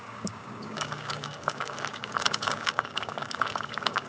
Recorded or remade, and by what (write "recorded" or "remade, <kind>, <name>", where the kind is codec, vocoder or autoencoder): remade, codec, DAC